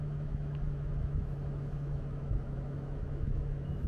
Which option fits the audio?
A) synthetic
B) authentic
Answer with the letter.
A